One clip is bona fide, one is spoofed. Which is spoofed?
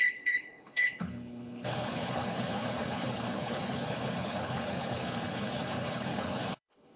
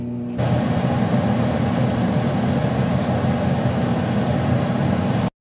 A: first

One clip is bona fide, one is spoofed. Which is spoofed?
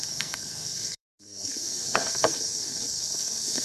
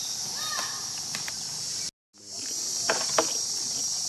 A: first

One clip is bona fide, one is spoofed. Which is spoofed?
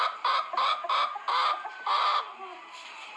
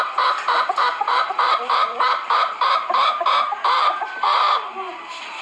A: second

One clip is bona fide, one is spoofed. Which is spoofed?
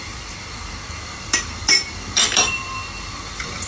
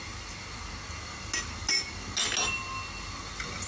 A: first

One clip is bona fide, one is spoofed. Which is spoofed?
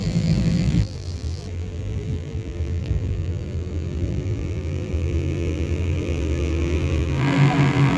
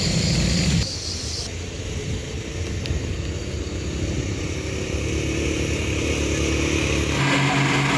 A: first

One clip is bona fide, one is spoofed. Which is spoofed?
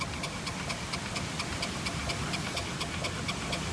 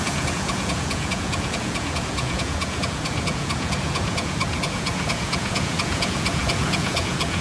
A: second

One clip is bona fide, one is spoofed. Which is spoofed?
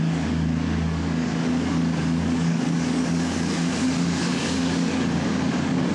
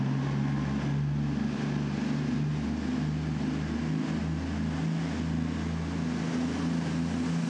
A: first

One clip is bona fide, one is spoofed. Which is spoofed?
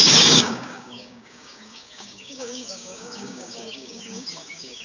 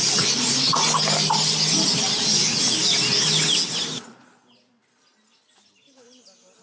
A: first